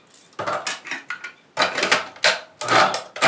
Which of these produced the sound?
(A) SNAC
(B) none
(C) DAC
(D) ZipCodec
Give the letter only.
B